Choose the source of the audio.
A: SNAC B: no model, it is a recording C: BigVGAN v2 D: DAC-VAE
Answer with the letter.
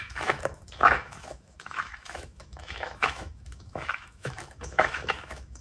D